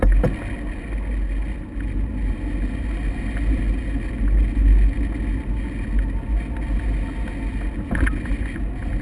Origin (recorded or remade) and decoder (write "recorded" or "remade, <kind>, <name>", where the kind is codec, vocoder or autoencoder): recorded